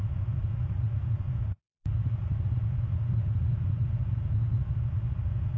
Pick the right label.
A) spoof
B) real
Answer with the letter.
B